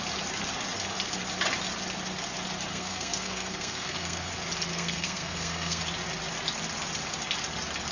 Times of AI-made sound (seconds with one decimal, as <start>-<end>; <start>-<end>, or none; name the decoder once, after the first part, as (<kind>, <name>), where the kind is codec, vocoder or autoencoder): 2.7-4.3 (codec, SNAC); 4.7-5.8